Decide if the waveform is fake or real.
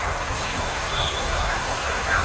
fake